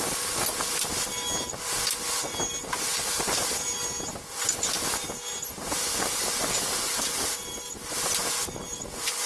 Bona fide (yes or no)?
yes